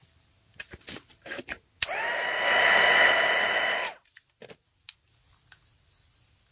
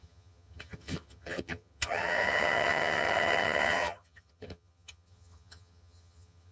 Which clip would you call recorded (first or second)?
first